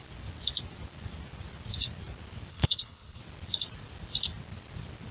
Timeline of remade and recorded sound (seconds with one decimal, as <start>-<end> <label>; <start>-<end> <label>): 0.0-2.5 recorded; 2.5-3.2 remade; 3.2-5.1 recorded